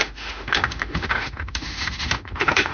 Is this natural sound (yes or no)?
no